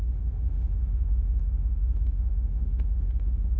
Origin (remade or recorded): remade